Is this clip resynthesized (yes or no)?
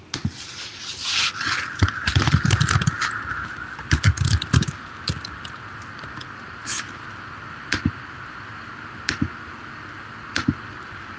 no